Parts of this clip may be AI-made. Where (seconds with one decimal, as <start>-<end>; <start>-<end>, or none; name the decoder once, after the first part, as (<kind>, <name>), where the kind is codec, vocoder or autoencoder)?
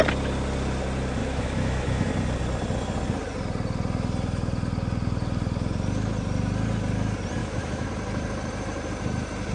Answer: 1.2-2.1 (autoencoder, DAC-VAE); 7.4-7.9